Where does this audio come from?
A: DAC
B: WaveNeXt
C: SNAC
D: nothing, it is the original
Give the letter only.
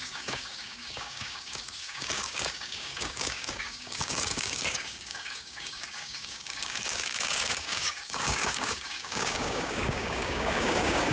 A